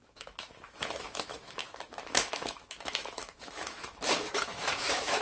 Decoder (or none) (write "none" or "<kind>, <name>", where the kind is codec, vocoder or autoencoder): autoencoder, DAC-VAE